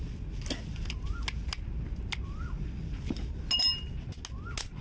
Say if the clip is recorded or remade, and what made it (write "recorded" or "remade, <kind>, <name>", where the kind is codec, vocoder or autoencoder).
recorded